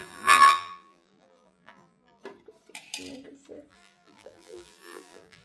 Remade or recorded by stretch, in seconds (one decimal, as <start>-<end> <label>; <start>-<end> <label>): 0.0-2.2 remade; 2.2-3.7 recorded; 3.7-5.4 remade